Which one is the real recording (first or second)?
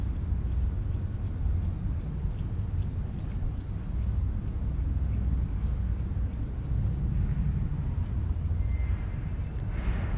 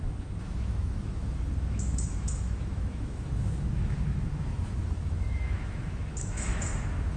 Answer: first